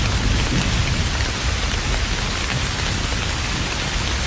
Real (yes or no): yes